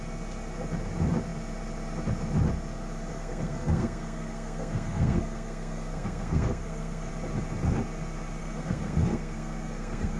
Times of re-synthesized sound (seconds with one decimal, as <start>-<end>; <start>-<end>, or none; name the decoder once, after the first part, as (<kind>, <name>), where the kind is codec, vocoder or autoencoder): 3.1-7.1 (codec, SNAC); 8.4-10.2